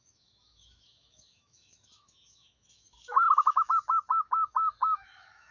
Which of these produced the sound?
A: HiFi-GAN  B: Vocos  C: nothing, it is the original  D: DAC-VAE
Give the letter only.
D